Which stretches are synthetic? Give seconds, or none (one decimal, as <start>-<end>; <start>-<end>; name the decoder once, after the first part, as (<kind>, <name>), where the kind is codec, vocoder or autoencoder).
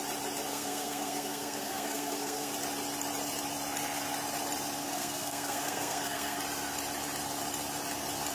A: 0.5-2.5 (codec, SNAC); 4.8-6.4